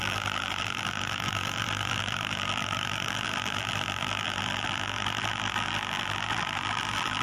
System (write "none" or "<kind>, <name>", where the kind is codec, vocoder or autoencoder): vocoder, BigVGAN v2